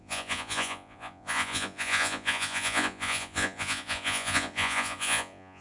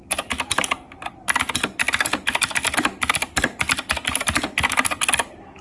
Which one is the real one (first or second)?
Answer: second